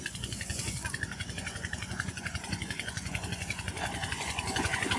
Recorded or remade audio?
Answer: remade